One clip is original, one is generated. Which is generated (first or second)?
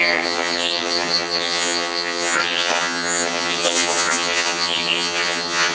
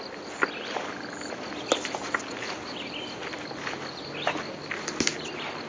first